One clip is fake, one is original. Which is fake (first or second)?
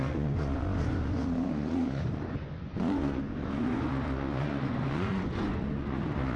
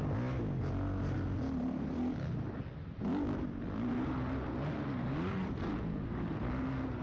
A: first